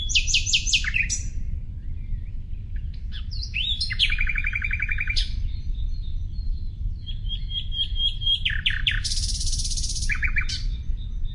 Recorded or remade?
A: remade